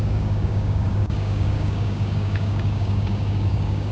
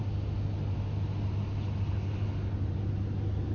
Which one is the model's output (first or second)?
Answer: first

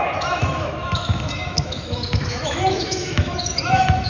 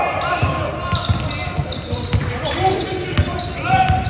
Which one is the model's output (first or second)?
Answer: first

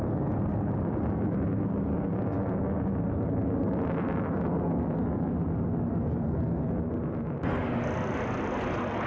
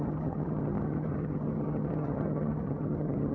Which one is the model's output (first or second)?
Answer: second